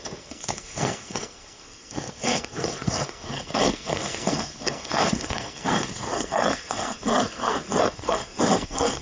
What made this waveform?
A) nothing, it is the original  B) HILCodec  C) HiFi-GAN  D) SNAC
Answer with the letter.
D